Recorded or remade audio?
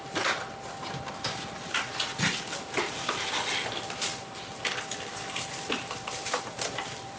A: remade